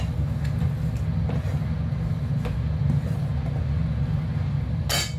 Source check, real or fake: real